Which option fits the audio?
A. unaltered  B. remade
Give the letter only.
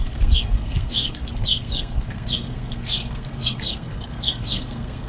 B